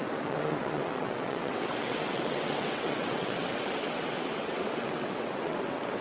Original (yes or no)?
no